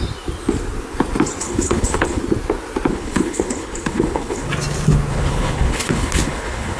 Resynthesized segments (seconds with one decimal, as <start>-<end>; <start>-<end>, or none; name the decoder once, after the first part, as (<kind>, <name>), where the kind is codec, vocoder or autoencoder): 1.4-2.2 (codec, HILCodec); 2.9-4.5; 5.1-6.8

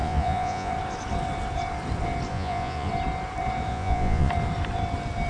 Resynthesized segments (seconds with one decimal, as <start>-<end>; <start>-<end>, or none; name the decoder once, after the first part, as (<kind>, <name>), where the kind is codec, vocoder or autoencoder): 0.0-0.7 (vocoder, Vocos); 2.3-2.9; 3.7-4.3

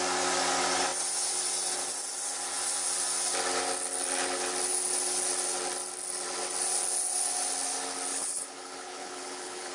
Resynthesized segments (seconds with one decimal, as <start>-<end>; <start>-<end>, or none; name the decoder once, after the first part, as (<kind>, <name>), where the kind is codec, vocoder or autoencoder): 8.1-9.7 (codec, HILCodec)

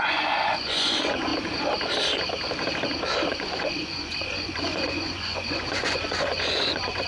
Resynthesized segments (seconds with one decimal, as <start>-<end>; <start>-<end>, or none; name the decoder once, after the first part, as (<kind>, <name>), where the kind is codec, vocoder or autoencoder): 0.0-1.3 (vocoder, Vocos); 3.3-7.1